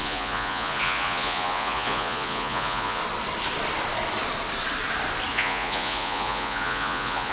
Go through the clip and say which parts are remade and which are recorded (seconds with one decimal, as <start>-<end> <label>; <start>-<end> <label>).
0.0-3.0 remade; 3.0-5.3 recorded; 5.3-7.3 remade